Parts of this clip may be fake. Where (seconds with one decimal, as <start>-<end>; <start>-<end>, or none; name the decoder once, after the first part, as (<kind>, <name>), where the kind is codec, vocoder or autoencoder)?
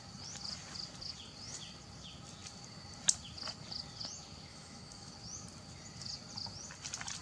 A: 4.5-5.1 (autoencoder, DAC-VAE)